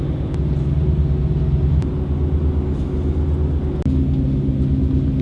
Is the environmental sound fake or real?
real